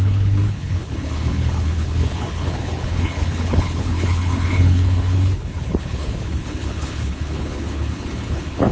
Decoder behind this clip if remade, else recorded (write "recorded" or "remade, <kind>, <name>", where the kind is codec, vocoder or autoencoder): remade, codec, HILCodec